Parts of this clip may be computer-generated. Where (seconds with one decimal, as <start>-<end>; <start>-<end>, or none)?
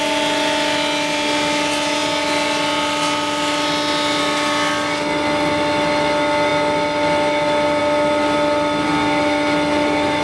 none